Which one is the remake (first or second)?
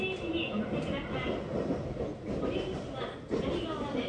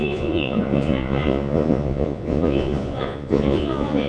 second